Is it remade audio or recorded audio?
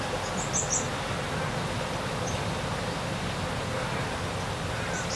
recorded